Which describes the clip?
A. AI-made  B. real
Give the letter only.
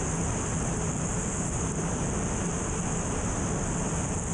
B